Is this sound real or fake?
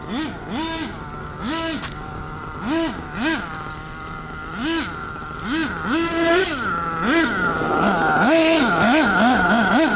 real